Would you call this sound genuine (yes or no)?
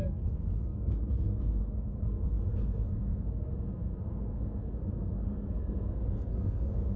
no